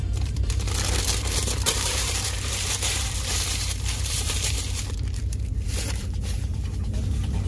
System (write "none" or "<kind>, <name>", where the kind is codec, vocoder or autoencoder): vocoder, BigVGAN v2